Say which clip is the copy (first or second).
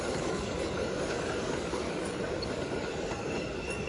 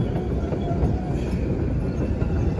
first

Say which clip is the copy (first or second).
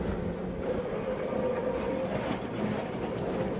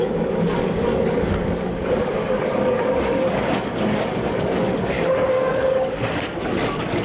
second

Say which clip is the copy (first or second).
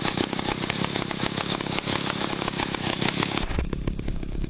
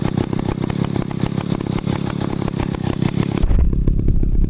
first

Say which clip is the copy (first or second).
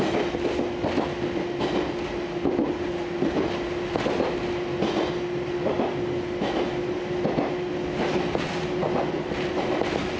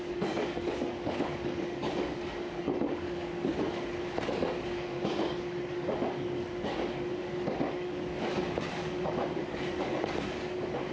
second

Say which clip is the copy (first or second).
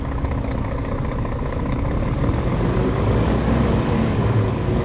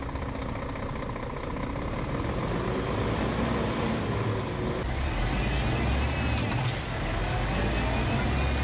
first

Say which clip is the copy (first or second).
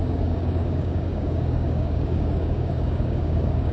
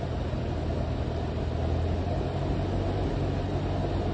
first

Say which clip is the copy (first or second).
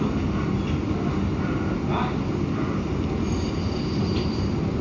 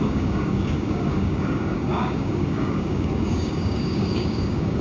second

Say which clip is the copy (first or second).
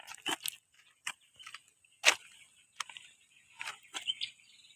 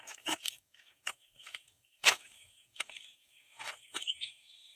second